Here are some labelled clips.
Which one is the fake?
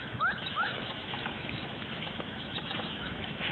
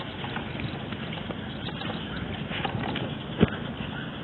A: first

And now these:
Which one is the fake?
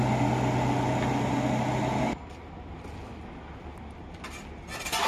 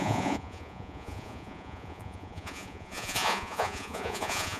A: second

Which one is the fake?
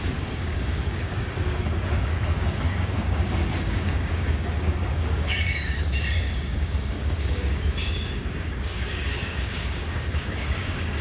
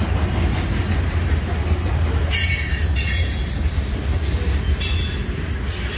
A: first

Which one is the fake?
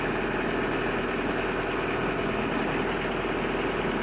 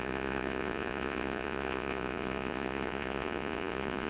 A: second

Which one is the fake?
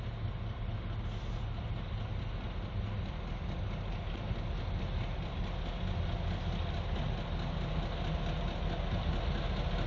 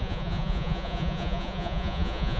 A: second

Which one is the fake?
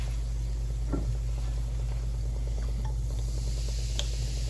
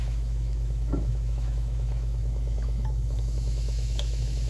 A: second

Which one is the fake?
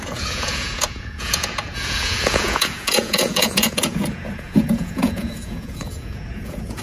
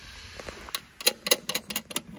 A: first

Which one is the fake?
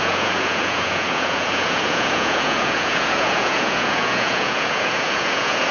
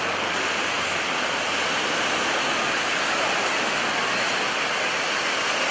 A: first